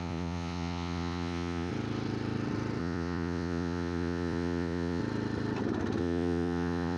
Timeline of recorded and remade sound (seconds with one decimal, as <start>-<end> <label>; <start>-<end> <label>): 0.0-1.7 remade; 1.7-2.8 recorded; 2.8-5.0 remade; 5.0-6.0 recorded; 6.0-7.0 remade